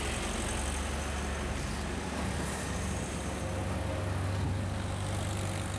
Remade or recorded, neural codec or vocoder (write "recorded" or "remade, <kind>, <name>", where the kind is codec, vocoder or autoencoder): recorded